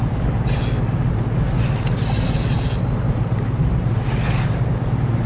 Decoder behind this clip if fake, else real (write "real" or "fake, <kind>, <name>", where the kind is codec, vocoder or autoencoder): real